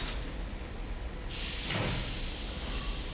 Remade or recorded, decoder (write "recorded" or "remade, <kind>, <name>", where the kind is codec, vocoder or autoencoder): recorded